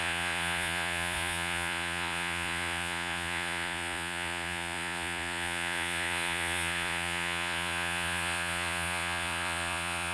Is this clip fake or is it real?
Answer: fake